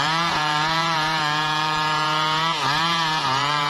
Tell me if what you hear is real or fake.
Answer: fake